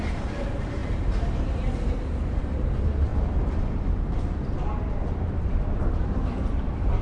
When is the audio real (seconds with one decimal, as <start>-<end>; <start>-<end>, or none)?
3.1-5.2